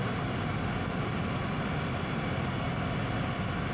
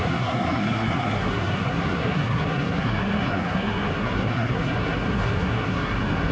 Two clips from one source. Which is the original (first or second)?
first